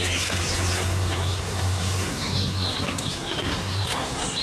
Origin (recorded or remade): remade